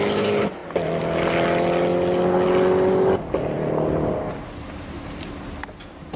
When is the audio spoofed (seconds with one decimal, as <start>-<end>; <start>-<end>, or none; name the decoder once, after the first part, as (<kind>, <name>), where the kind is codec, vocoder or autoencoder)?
0.0-0.6 (vocoder, BigVGAN v2); 4.3-6.2